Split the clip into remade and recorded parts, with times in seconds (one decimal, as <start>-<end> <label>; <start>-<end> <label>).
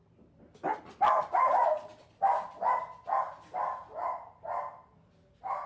0.0-5.7 recorded